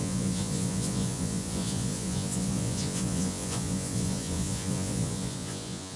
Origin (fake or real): fake